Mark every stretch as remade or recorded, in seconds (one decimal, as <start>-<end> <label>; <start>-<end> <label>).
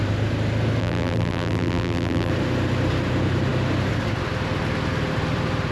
0.0-0.8 recorded; 0.8-2.3 remade; 2.3-5.7 recorded